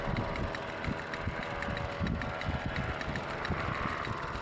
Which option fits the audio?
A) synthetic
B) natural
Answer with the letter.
B